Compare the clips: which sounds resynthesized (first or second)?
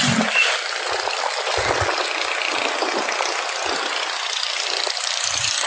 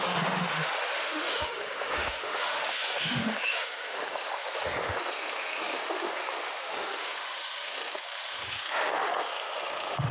second